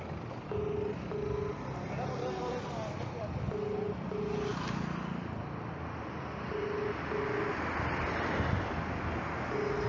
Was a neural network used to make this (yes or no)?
no